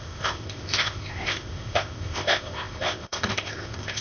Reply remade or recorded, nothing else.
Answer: remade